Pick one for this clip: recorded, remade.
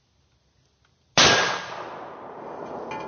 recorded